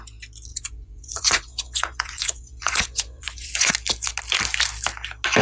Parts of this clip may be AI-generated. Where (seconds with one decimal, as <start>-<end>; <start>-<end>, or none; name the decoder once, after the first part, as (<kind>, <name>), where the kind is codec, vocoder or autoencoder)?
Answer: 0.5-3.7 (vocoder, Vocos)